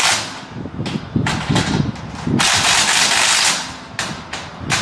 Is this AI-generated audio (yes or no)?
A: no